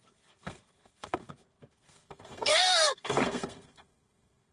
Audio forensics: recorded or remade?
remade